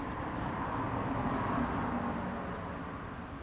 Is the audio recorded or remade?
recorded